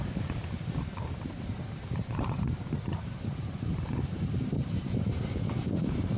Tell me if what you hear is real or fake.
fake